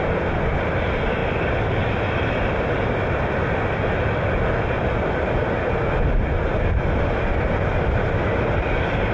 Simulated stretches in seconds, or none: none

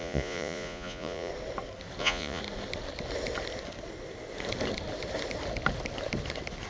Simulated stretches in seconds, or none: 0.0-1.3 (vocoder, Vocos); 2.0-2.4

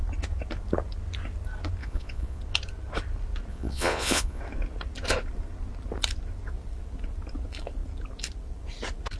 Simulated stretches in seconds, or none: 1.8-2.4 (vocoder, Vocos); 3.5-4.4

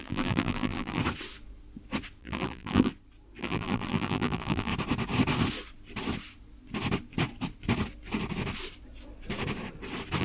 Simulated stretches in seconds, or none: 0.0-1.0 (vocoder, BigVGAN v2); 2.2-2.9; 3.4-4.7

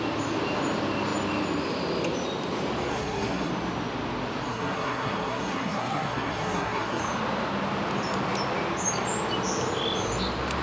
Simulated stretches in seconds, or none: 2.9-3.5 (codec, SNAC); 4.5-7.0

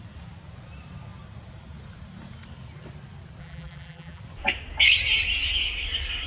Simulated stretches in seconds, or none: 3.4-4.2 (vocoder, BigVGAN v2)

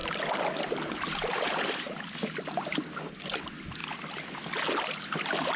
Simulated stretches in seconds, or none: none